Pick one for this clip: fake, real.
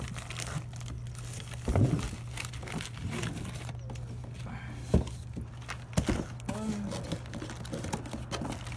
real